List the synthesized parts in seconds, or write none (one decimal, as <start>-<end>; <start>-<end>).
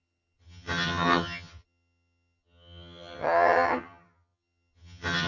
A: 0.0-5.3